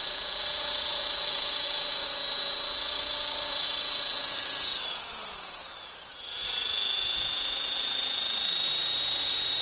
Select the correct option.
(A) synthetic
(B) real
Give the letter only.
A